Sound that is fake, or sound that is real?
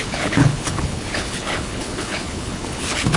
fake